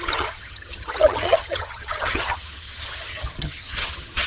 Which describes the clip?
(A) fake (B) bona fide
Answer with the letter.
A